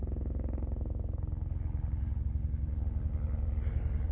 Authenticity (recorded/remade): recorded